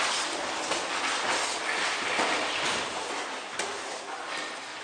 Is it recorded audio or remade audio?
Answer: recorded